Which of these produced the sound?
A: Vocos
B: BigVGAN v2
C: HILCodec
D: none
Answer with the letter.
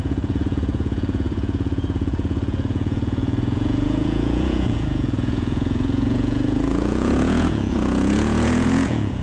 A